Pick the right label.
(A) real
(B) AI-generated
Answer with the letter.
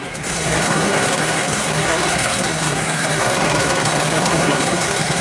B